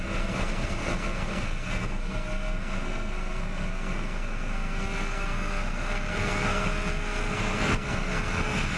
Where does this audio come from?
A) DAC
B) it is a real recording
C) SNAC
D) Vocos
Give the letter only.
C